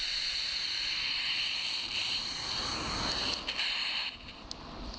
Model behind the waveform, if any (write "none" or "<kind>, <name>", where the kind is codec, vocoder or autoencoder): none